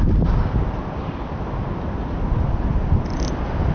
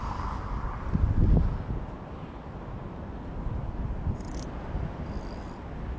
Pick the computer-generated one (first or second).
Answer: first